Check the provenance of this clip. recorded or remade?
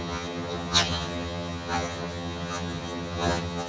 remade